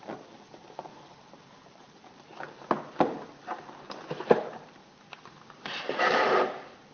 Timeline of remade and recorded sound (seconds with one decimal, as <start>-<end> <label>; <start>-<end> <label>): 0.0-0.9 recorded; 0.9-2.8 remade; 2.8-4.8 recorded; 4.8-6.4 remade; 6.4-6.9 recorded